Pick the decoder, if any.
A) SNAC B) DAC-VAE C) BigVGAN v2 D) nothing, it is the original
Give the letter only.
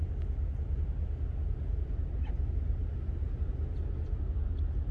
D